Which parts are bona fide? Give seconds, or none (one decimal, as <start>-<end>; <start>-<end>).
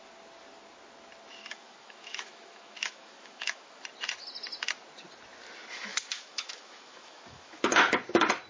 0.0-1.4; 3.8-5.9; 7.6-8.5